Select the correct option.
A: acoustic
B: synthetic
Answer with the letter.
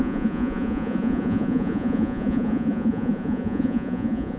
B